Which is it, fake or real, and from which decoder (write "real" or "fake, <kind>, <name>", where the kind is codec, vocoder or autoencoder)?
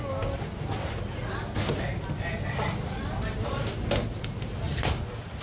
real